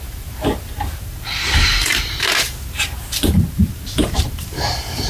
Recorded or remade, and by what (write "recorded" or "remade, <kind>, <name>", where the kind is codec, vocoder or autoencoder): remade, vocoder, BigVGAN v2